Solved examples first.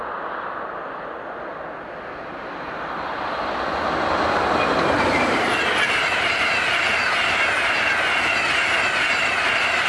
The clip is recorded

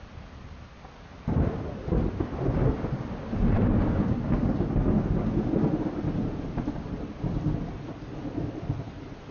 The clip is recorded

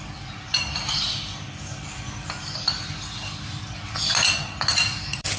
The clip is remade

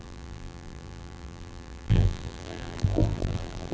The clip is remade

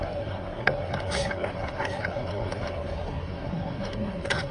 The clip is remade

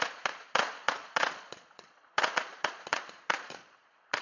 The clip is remade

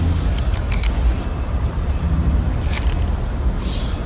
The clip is recorded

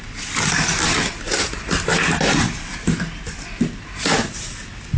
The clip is recorded